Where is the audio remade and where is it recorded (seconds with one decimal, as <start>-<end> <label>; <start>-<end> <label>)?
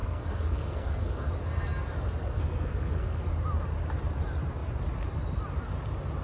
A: 0.0-1.3 remade; 1.3-2.2 recorded; 2.2-3.3 remade; 3.3-6.2 recorded